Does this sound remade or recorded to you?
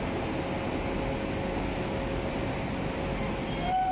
recorded